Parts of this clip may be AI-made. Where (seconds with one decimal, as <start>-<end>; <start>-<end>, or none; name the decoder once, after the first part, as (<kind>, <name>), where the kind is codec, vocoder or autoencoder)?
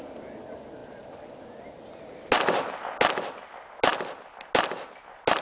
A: none